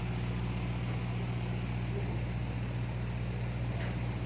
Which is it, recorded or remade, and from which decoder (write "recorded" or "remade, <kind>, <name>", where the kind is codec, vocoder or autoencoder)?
recorded